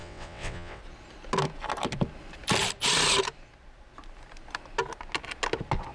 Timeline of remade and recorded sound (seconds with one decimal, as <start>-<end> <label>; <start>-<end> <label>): 0.0-0.8 remade; 0.8-5.9 recorded